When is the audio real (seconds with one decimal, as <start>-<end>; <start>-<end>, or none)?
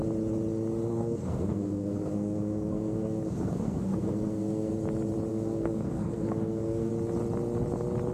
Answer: 0.0-0.9; 4.7-5.3; 6.9-8.1